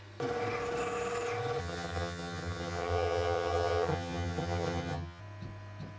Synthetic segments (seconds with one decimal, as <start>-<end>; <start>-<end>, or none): 1.6-5.2